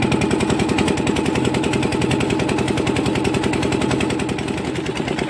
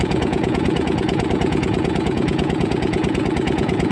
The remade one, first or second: second